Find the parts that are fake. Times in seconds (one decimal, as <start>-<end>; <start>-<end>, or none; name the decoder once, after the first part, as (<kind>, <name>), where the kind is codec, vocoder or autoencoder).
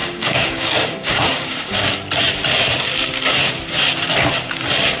0.0-1.9 (codec, DAC)